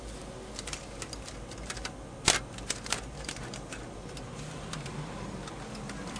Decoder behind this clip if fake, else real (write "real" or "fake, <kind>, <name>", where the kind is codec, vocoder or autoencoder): real